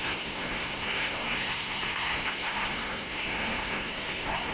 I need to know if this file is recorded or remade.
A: remade